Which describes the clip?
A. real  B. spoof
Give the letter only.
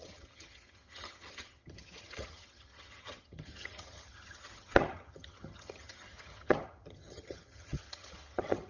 B